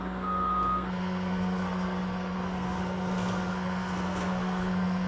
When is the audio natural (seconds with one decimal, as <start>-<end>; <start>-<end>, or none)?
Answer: none